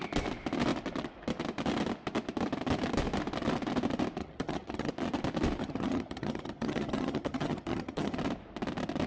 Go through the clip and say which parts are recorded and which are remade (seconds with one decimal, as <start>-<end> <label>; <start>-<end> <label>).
0.0-4.2 recorded; 4.2-4.9 remade; 4.9-5.6 recorded; 5.6-8.2 remade; 8.2-9.1 recorded